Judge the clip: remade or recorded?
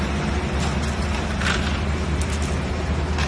recorded